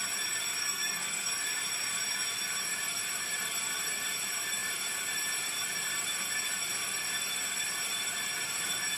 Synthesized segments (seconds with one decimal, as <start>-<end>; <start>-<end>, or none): 0.6-1.3